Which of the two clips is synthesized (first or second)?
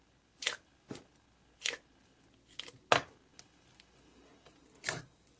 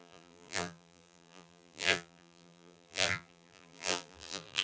second